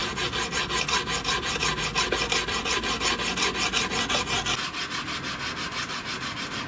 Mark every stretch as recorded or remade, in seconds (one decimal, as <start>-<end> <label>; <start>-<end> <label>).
0.0-6.7 recorded